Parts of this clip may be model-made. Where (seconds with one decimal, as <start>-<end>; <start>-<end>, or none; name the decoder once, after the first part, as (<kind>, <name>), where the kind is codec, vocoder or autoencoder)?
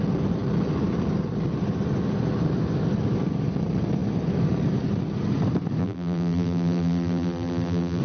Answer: 5.8-8.0 (vocoder, BigVGAN v2)